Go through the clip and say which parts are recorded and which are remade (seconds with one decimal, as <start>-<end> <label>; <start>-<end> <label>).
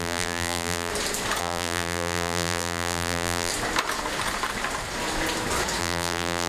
0.0-0.9 remade; 0.9-1.4 recorded; 1.4-3.5 remade; 3.5-5.8 recorded; 5.8-6.5 remade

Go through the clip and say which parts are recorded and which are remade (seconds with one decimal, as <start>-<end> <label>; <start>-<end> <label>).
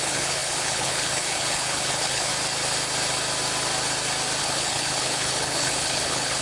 0.0-2.3 remade; 2.3-4.4 recorded; 4.4-6.4 remade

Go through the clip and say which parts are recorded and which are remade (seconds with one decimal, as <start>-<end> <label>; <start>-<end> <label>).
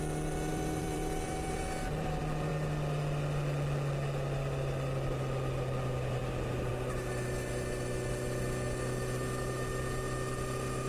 0.0-0.5 recorded; 0.5-1.6 remade; 1.6-10.9 recorded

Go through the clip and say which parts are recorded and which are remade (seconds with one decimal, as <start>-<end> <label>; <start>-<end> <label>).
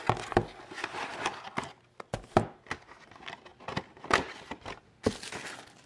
0.0-5.9 recorded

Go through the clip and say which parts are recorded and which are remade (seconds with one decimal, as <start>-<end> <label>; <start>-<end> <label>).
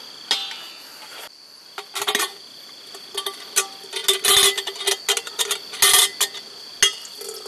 0.0-7.5 recorded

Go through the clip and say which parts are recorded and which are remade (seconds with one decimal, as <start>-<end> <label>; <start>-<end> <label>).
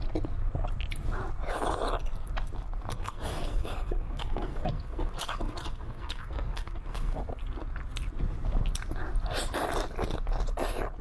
0.0-2.9 recorded; 2.9-7.2 remade; 7.2-11.0 recorded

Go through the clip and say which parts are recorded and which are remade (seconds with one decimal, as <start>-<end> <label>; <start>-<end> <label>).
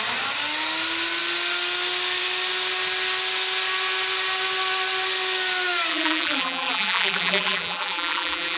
0.0-5.9 recorded; 5.9-8.6 remade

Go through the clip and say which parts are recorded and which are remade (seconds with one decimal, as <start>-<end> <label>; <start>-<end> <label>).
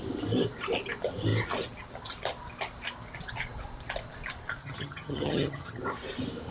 0.0-4.6 recorded; 4.6-5.8 remade; 5.8-6.5 recorded